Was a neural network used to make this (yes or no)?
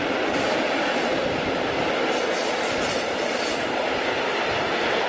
yes